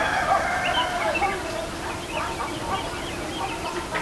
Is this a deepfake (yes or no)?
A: yes